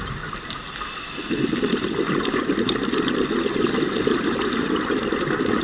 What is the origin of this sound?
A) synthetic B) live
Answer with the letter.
B